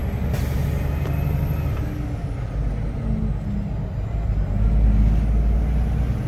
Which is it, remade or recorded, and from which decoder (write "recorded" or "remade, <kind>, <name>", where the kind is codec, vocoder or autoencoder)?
recorded